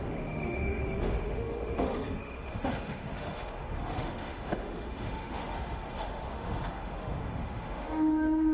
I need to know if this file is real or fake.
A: fake